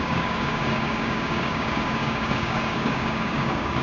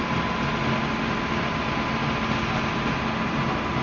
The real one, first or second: second